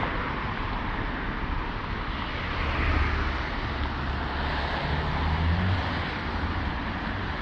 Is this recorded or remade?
recorded